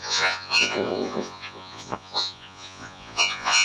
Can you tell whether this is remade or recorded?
remade